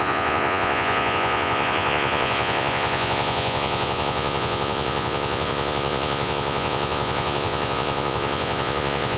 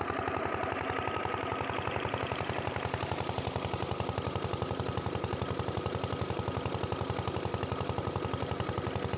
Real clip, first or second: second